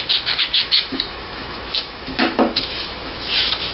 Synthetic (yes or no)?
yes